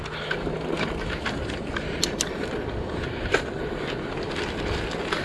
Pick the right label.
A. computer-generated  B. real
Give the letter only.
B